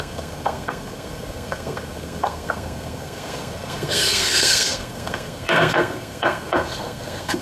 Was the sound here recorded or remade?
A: remade